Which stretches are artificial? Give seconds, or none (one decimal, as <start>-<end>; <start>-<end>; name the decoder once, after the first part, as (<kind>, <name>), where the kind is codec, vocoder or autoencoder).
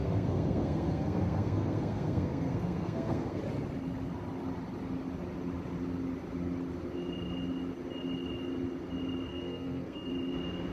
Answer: 0.0-3.4 (codec, SNAC); 9.3-10.1